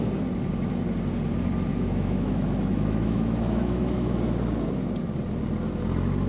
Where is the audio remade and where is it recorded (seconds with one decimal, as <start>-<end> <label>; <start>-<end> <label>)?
0.0-1.7 recorded; 1.7-4.3 remade; 4.3-6.3 recorded